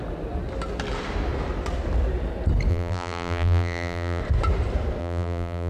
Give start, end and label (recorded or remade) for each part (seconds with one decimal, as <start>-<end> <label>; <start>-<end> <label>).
0.0-2.7 recorded; 2.7-4.2 remade; 4.2-5.0 recorded; 5.0-5.7 remade